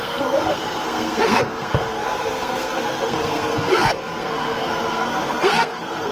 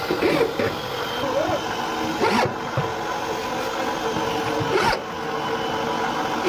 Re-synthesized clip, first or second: first